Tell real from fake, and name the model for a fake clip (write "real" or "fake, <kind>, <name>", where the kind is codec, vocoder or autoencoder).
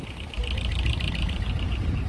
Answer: fake, vocoder, BigVGAN v2